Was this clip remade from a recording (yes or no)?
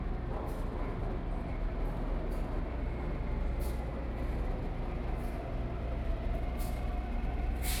no